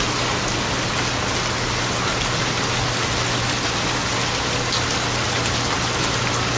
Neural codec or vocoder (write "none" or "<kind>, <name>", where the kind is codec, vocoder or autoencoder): none